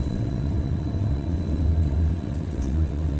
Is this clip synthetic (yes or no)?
yes